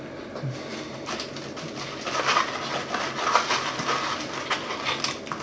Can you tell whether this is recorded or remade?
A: recorded